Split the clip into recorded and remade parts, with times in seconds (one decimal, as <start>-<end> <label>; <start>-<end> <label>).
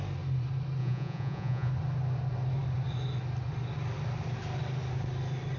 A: 0.0-0.8 recorded; 0.8-1.7 remade; 1.7-5.6 recorded